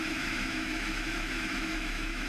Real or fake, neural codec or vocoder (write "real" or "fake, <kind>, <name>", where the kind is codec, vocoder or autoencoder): fake, autoencoder, DAC-VAE